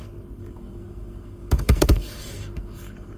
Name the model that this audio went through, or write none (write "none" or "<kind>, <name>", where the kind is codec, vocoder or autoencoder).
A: codec, SNAC